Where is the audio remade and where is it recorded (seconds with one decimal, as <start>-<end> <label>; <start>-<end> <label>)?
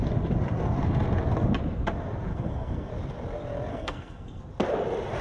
0.0-2.3 recorded; 2.3-2.9 remade; 2.9-3.7 recorded; 3.7-4.4 remade; 4.4-5.2 recorded